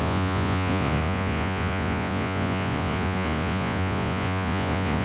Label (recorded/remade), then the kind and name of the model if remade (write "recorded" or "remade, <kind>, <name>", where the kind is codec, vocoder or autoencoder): remade, vocoder, Vocos